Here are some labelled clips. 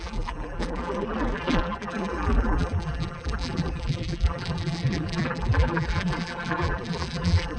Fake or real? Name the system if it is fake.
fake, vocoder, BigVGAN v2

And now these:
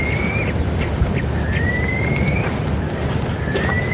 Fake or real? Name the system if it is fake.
real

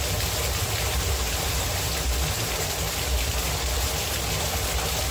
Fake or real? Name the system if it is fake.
real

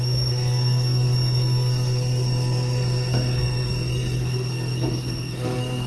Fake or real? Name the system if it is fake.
fake, codec, SNAC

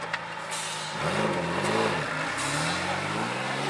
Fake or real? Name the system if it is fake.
real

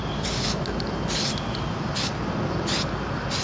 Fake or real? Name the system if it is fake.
real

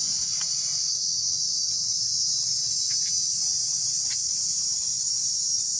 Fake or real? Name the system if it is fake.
real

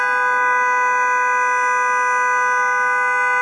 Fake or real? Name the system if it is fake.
real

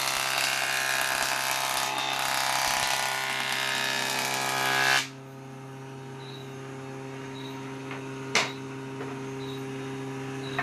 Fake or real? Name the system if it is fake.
real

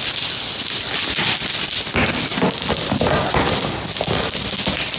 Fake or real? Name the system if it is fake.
real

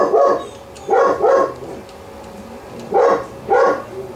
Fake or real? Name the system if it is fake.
real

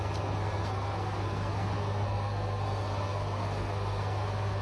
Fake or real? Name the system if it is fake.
fake, codec, SNAC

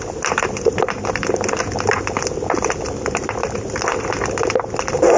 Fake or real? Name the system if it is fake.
real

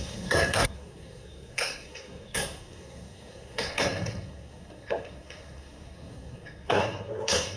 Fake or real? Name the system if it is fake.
fake, codec, SNAC